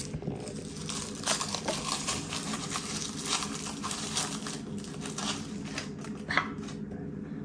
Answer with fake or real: real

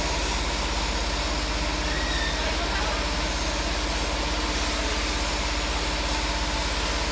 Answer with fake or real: real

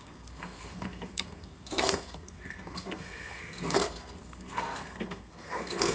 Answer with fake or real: fake